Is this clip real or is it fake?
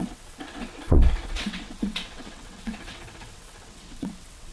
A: fake